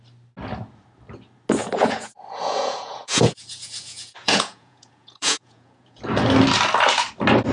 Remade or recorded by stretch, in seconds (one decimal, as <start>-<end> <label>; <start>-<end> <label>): 0.0-1.6 recorded; 1.6-6.0 remade; 6.0-7.5 recorded